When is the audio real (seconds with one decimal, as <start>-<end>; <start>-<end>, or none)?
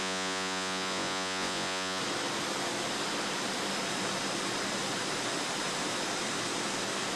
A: 2.0-7.2